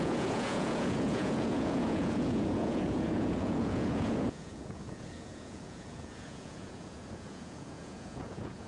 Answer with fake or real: fake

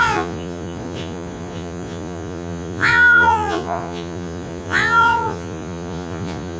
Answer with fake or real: fake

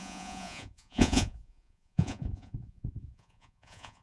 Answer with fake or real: fake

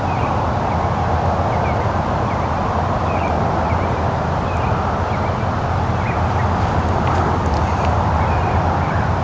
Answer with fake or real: real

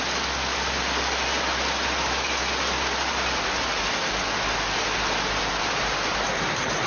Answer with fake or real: real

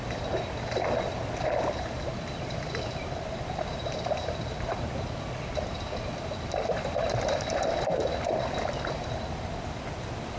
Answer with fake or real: real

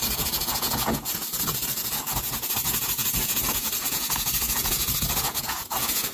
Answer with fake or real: fake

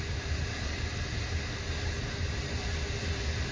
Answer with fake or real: real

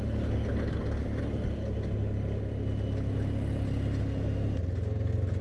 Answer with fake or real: real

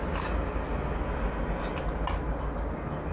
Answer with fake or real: real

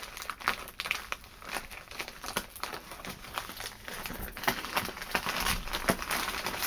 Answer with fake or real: real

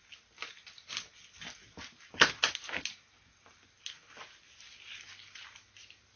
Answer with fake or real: real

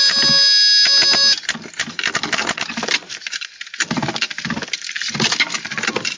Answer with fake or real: real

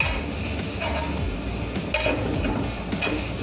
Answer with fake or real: real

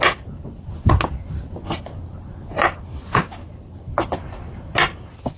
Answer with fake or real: real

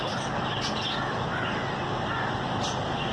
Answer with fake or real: real